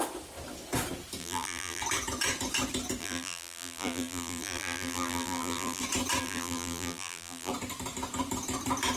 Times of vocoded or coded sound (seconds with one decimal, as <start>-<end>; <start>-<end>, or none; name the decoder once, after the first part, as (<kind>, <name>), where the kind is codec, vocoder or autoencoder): 1.2-1.8 (vocoder, BigVGAN v2); 3.0-5.8; 6.2-7.5